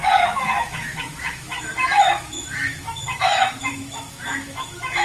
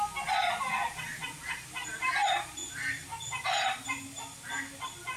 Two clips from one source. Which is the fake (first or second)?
first